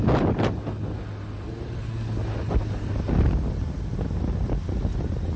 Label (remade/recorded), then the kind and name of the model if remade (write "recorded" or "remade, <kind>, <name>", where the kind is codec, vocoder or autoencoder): recorded